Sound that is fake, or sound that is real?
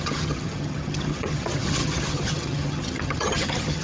fake